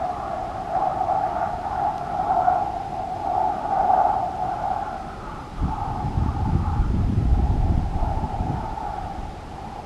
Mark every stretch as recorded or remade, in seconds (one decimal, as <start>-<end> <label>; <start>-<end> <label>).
0.0-0.9 remade; 0.9-1.5 recorded; 1.5-9.9 remade